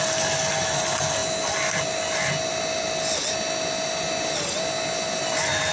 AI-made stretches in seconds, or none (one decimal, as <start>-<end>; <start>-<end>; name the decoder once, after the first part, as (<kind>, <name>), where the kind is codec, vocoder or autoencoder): none